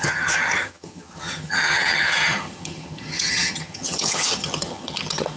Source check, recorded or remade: remade